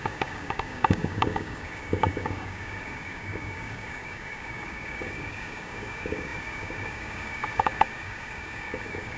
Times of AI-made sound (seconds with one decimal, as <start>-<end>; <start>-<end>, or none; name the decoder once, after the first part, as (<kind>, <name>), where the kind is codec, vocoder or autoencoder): 0.0-9.2 (codec, DAC)